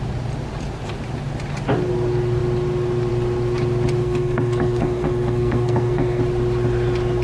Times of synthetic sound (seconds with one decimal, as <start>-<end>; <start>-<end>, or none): 4.0-6.2